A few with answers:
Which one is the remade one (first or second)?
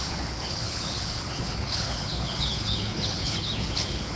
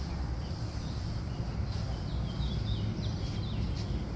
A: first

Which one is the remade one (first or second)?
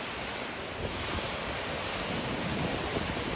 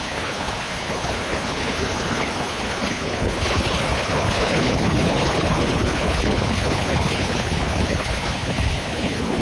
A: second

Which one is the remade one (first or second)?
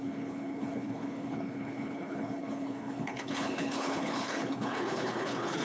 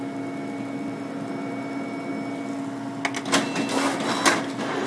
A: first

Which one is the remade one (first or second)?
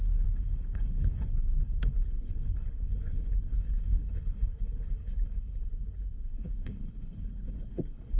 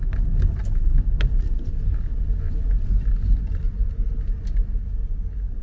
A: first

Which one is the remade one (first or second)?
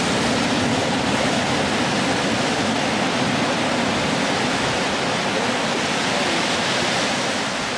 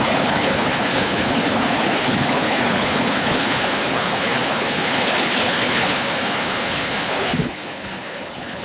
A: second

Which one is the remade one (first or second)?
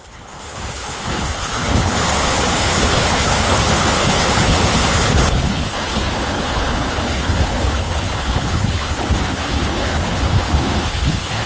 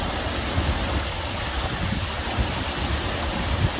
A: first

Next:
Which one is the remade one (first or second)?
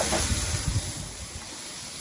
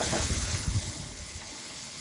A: second